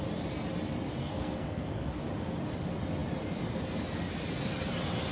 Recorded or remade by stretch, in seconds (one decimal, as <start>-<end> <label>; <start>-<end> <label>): 0.0-1.0 recorded; 1.0-2.0 remade; 2.0-5.1 recorded

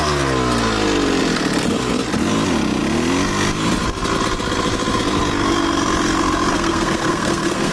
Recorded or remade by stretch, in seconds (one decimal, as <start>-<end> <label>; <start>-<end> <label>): 0.0-6.5 recorded; 6.5-7.7 remade

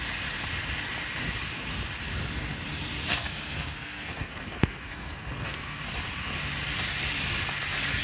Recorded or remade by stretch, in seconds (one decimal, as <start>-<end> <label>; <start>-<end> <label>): 0.0-3.1 recorded; 3.1-5.8 remade; 5.8-8.0 recorded